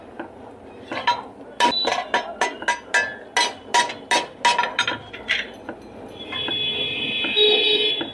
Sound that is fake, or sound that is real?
real